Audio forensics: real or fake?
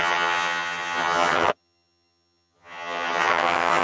fake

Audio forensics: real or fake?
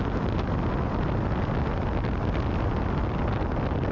real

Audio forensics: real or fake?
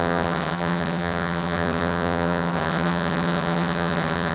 fake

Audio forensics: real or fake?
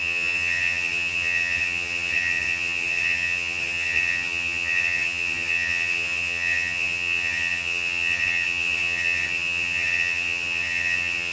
fake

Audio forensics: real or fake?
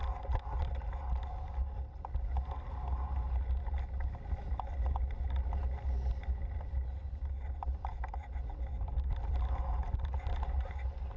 real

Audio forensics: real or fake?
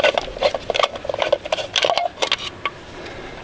real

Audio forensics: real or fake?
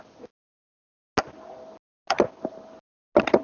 real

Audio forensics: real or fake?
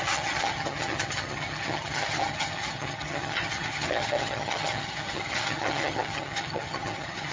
fake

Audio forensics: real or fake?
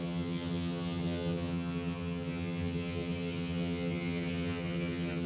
fake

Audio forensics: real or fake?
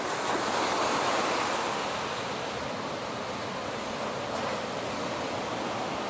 real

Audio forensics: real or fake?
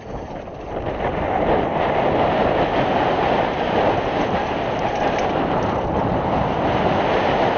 real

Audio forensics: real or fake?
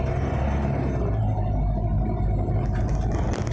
real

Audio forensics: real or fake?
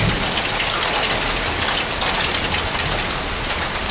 real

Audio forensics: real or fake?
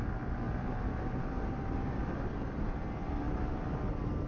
real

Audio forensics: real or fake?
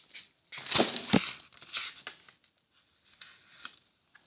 real